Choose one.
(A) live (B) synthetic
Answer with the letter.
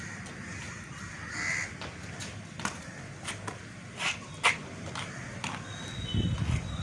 A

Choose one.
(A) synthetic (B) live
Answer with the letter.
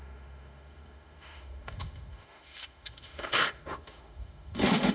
A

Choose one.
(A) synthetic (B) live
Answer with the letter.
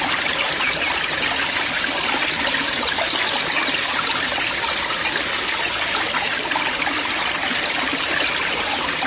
B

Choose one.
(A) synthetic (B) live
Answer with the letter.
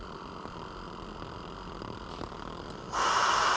B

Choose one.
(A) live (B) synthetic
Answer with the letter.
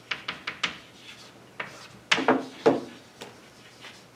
A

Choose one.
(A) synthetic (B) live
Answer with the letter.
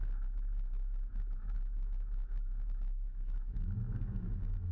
A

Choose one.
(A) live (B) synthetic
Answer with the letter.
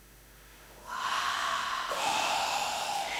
B